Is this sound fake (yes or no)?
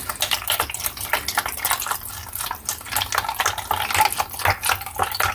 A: no